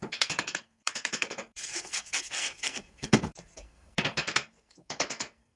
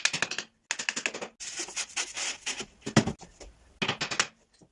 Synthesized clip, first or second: first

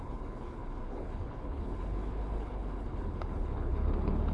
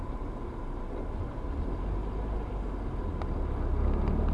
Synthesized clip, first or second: first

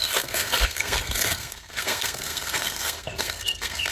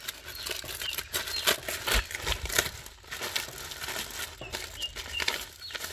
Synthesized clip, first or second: first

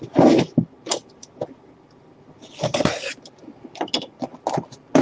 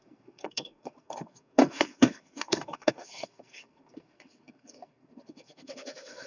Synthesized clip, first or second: second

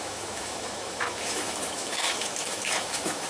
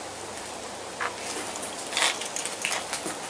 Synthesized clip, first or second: first